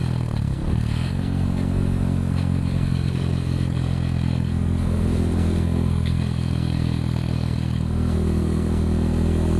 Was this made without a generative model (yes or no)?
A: no